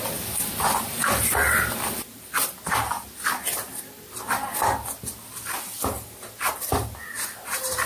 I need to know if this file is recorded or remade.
recorded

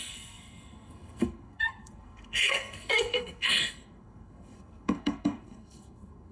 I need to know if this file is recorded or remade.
remade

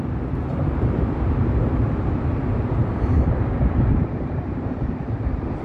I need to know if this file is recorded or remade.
remade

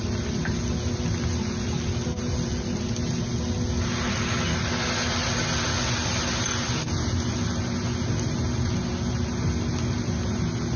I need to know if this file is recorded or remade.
recorded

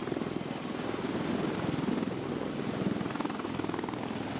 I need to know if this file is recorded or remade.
recorded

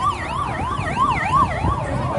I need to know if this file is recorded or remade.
recorded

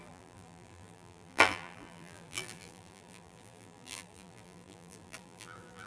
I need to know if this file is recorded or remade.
remade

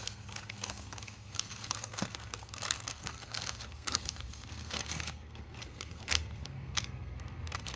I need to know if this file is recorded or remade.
remade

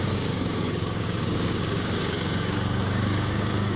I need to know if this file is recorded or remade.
remade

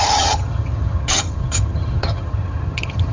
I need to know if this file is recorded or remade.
remade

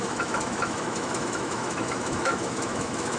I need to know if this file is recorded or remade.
remade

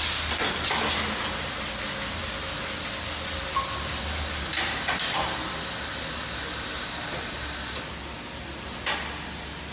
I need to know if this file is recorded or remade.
recorded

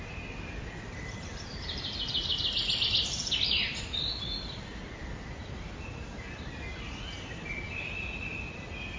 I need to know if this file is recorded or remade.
recorded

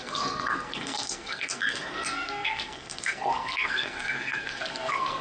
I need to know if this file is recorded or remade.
remade